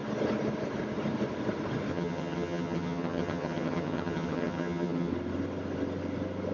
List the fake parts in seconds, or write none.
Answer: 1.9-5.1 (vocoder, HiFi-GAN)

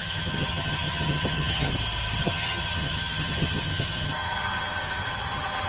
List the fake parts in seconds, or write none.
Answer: 0.0-1.7 (vocoder, HiFi-GAN); 2.2-5.7